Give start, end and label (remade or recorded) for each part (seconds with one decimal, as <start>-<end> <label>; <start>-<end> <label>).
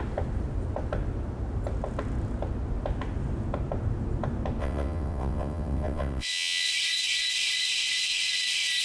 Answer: 0.0-4.6 recorded; 4.6-6.7 remade; 6.7-8.8 recorded